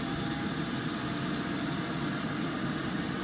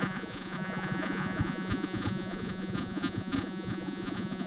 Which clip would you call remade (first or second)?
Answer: second